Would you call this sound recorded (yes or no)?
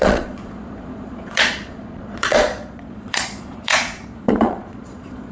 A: no